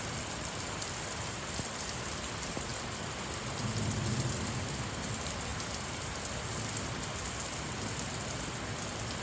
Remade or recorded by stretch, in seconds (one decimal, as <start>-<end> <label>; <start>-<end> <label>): 0.0-9.2 recorded